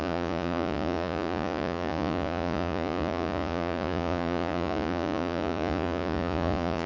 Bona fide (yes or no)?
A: no